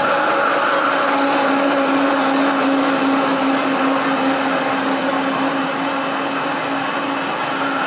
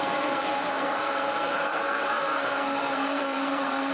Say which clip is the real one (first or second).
first